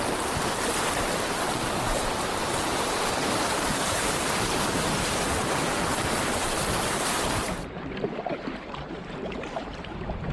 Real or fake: fake